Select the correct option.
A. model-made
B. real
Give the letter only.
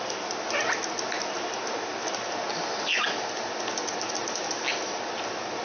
B